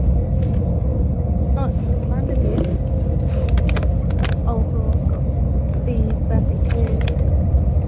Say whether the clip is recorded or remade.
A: recorded